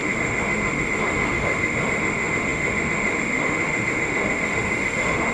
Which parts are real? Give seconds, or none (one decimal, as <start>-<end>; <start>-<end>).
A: none